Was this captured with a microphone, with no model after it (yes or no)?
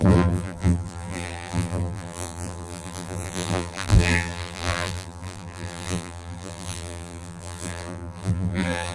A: no